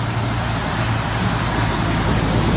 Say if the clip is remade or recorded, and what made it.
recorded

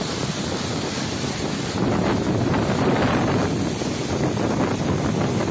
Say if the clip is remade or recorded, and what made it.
recorded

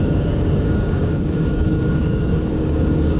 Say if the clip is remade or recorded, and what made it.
remade, codec, DAC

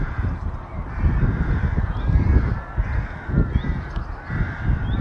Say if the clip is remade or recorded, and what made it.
recorded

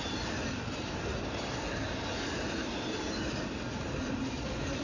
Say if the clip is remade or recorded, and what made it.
recorded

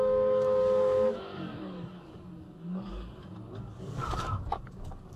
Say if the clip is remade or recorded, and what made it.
remade, codec, DAC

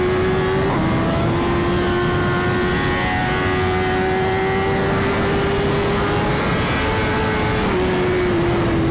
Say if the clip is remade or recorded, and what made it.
recorded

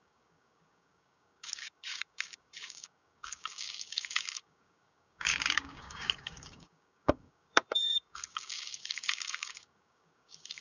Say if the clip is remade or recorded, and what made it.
remade, codec, DAC